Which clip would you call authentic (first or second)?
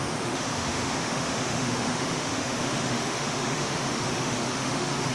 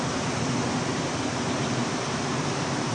second